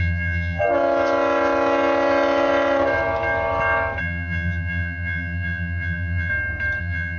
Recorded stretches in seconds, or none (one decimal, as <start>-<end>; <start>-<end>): 0.6-4.0; 6.3-6.8